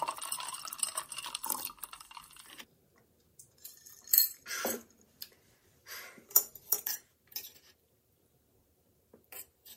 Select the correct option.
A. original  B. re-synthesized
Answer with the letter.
B